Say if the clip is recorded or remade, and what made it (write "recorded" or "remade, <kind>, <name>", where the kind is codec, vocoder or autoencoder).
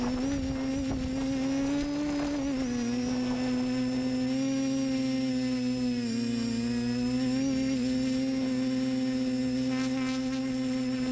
recorded